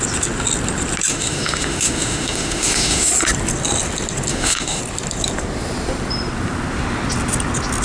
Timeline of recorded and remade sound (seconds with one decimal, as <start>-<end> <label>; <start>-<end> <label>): 0.0-1.1 recorded; 1.1-3.1 remade; 3.1-4.3 recorded; 4.3-4.8 remade; 4.8-7.8 recorded